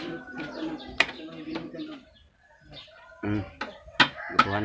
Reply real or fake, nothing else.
real